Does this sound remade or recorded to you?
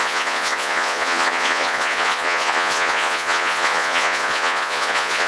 remade